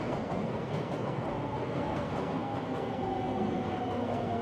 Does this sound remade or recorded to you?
remade